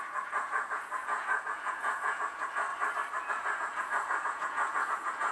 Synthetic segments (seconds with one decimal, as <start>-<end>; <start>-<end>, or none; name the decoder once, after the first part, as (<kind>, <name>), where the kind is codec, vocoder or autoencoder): 0.0-2.7 (vocoder, Vocos); 3.3-5.3